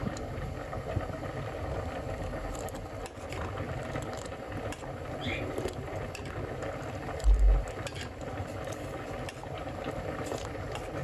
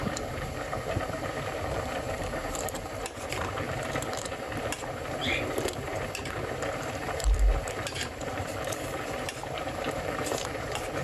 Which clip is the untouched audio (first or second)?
first